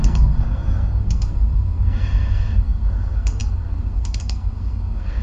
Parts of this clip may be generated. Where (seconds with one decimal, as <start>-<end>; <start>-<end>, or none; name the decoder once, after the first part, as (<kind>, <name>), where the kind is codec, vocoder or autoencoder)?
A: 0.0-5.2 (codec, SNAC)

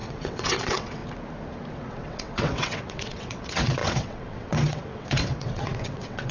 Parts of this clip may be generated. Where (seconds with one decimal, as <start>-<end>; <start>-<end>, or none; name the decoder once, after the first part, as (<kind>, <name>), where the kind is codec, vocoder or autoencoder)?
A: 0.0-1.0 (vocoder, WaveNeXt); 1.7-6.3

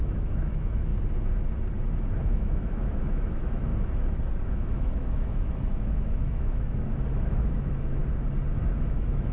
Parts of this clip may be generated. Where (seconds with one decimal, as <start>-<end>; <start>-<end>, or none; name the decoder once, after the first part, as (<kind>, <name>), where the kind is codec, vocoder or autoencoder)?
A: 0.0-0.9 (autoencoder, DAC-VAE); 2.3-3.7; 4.4-8.0; 8.7-9.3

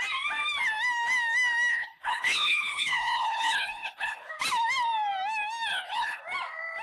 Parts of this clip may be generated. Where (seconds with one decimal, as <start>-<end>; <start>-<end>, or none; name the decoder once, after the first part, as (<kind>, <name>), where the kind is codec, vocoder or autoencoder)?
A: 1.7-4.3 (codec, HILCodec); 5.7-6.2

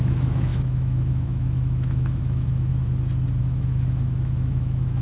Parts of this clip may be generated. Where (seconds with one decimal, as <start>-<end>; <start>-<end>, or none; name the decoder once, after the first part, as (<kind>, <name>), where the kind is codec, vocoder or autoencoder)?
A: 0.0-2.7 (autoencoder, DAC-VAE); 3.4-5.0

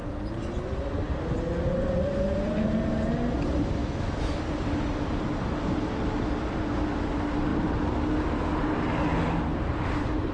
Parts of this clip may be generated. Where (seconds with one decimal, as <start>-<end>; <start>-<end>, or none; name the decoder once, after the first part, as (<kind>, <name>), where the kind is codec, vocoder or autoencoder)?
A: 3.8-4.4 (autoencoder, DAC-VAE)

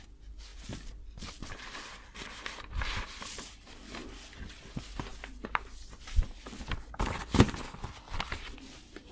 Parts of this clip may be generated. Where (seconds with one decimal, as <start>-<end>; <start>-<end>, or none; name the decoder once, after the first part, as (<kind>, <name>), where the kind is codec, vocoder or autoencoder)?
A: 0.5-2.6 (vocoder, BigVGAN v2)